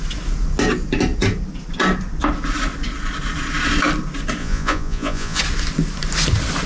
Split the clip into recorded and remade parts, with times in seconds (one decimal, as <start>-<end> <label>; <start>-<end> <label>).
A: 0.0-4.4 recorded; 4.4-5.4 remade; 5.4-6.7 recorded